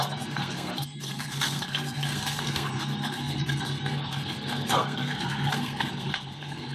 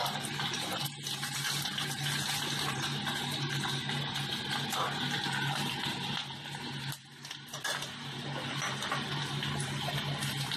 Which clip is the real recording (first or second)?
second